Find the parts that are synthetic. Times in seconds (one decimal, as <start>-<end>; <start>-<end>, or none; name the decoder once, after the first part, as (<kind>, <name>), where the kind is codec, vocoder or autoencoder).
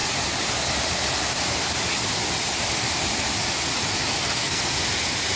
4.1-4.7 (codec, SNAC)